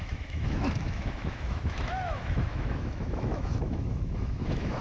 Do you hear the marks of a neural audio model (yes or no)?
yes